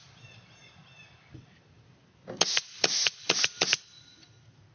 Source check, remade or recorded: recorded